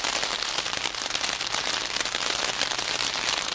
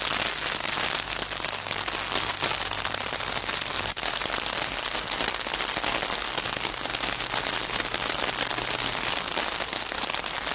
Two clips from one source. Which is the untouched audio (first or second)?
second